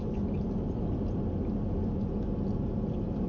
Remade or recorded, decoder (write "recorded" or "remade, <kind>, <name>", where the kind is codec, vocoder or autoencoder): recorded